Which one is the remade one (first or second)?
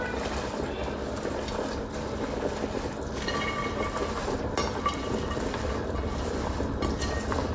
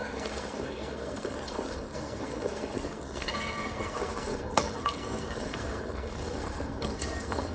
second